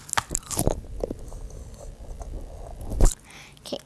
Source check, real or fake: real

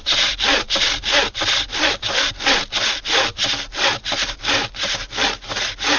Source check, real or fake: real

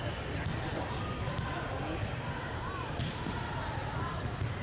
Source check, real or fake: real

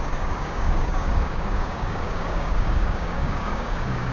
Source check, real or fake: fake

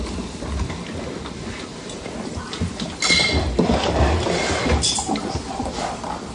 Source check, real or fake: real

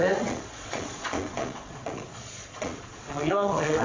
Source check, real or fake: fake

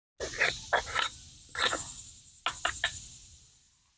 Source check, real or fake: real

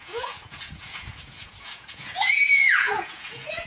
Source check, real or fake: fake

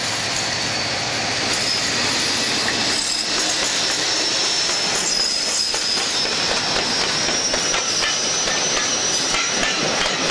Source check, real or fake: real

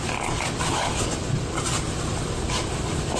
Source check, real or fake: real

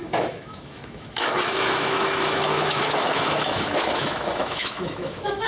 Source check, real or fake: fake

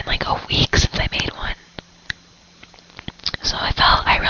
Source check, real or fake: fake